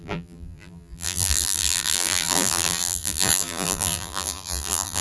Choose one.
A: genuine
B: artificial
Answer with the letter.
B